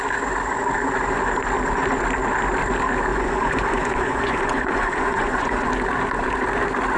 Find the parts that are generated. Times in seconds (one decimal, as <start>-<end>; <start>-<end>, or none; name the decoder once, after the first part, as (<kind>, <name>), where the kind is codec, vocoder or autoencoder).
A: 3.1-5.7 (vocoder, Vocos)